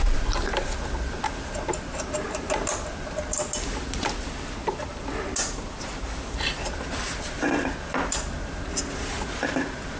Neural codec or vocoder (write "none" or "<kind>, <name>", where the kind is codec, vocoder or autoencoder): none